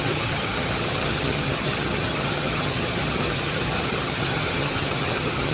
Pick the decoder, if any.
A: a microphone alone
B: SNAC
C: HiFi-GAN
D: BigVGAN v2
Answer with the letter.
C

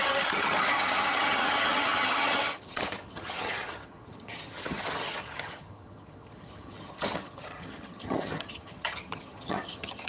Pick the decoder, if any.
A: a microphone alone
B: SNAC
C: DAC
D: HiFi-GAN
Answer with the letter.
D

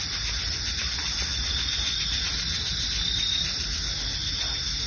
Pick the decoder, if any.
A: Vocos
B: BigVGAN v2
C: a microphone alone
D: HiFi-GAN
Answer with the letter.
C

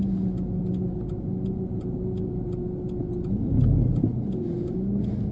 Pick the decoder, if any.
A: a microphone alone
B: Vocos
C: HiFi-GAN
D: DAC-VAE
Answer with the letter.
A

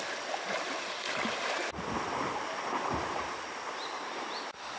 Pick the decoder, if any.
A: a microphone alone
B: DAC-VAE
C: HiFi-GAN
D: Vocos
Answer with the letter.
A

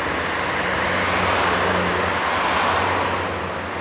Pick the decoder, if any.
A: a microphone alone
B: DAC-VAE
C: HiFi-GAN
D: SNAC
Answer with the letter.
A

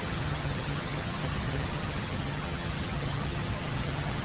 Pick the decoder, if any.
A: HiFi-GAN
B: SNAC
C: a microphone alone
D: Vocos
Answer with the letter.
A